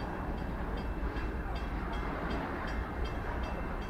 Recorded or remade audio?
remade